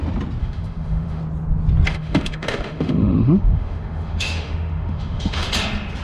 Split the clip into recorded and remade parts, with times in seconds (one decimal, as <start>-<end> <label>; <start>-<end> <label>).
0.0-0.4 recorded; 0.4-1.2 remade; 1.2-1.9 recorded; 1.9-5.5 remade; 5.5-6.0 recorded